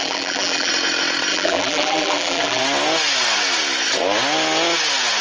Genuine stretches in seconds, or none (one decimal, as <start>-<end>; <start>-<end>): 0.7-1.3; 2.6-5.2